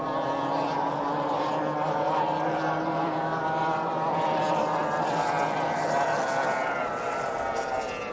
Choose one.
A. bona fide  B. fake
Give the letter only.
A